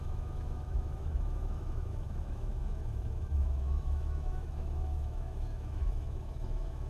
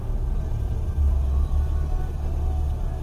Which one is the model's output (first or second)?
first